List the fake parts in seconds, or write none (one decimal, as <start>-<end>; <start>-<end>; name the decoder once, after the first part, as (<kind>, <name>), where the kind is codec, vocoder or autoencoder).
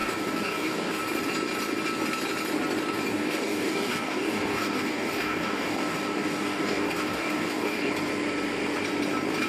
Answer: 0.0-1.0 (codec, DAC); 3.1-7.9